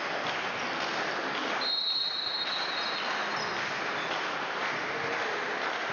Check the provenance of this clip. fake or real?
real